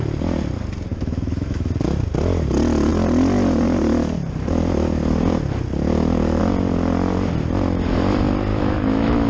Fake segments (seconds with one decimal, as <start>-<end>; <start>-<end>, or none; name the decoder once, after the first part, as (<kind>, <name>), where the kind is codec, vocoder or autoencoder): 0.9-1.7 (autoencoder, DAC-VAE); 8.5-9.3